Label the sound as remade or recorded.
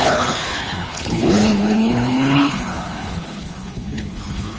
remade